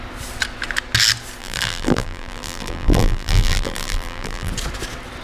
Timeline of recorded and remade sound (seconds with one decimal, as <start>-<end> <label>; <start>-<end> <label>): 0.0-1.4 recorded; 1.4-4.5 remade; 4.5-5.2 recorded